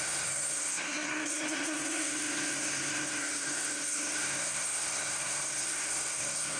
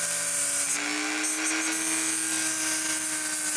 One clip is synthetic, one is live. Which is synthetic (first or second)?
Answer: first